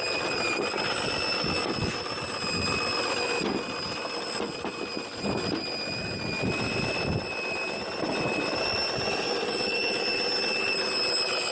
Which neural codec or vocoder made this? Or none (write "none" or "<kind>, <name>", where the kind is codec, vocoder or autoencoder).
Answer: none